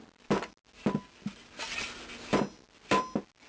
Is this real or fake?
real